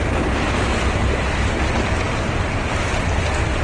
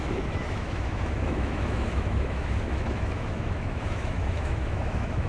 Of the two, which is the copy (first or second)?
second